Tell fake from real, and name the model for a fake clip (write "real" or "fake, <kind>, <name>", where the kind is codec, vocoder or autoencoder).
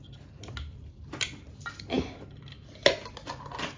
real